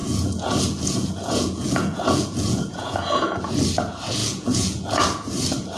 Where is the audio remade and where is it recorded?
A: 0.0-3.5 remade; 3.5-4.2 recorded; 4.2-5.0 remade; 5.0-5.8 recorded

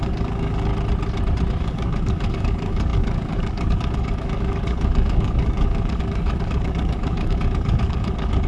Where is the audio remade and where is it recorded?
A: 0.0-0.7 remade; 0.7-1.6 recorded; 1.6-8.5 remade

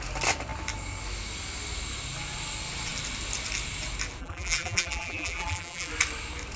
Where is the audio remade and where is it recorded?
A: 0.0-4.2 recorded; 4.2-5.9 remade; 5.9-6.6 recorded

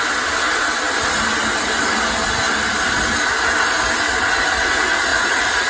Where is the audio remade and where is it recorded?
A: 0.0-5.1 recorded; 5.1-5.7 remade

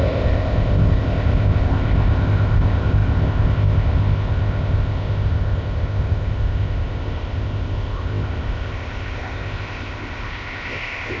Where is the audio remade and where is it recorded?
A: 0.0-11.2 remade